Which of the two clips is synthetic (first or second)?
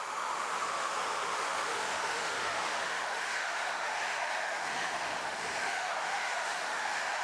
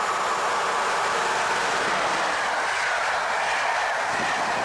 first